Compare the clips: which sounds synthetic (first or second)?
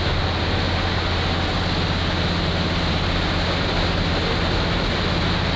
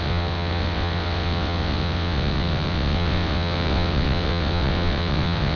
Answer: second